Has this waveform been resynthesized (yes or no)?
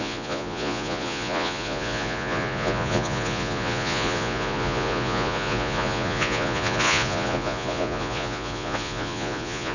yes